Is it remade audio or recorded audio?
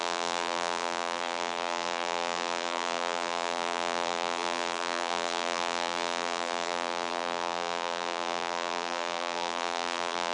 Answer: remade